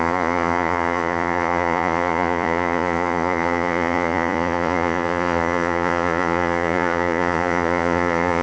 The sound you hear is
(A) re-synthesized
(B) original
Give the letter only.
A